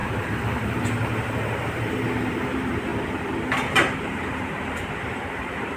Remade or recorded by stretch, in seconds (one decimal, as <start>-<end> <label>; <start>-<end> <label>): 0.0-2.9 remade; 2.9-4.0 recorded; 4.0-5.8 remade